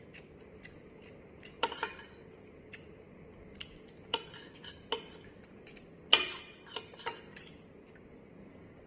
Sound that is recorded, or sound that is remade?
recorded